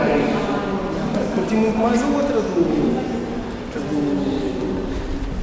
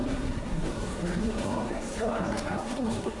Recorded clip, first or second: first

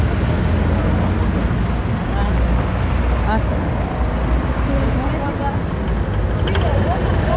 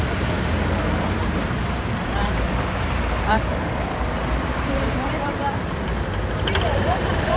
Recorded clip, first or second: first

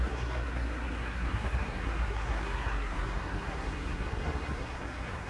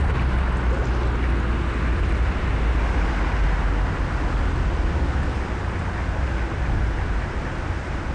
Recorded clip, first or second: second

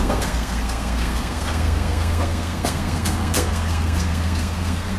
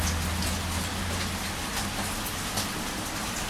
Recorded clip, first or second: second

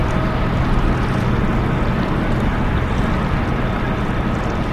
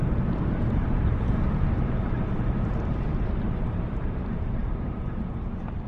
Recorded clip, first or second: first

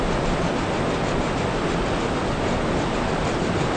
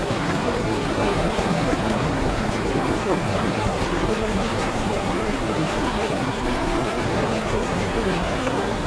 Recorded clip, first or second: first